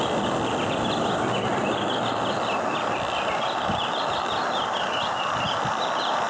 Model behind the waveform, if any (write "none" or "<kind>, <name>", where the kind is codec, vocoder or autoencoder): none